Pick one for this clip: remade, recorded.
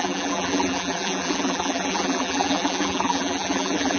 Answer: remade